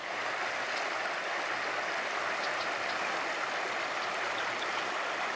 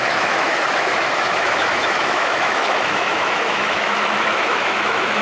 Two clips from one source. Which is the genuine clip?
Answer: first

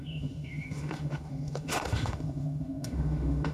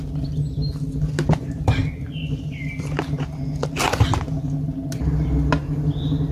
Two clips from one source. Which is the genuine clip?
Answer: second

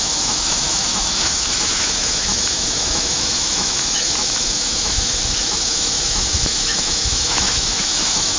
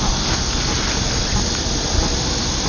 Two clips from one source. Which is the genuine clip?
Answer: second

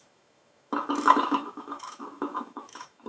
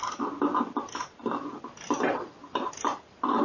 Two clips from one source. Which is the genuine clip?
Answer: second